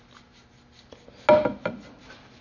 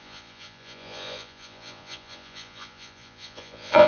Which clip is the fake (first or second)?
second